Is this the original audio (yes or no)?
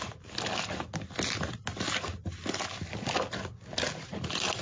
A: yes